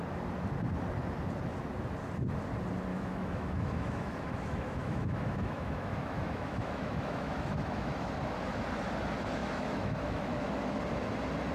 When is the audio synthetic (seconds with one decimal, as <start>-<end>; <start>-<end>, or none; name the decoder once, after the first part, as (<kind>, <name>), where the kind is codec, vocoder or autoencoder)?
2.9-8.1 (autoencoder, DAC-VAE); 9.4-10.8